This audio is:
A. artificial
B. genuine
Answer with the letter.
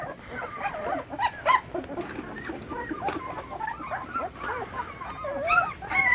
B